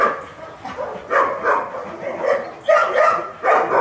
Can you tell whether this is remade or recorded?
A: recorded